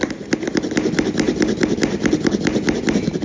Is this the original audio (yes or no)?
yes